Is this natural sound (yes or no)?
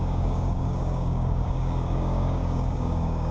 no